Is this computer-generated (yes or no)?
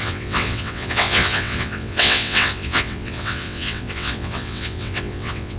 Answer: yes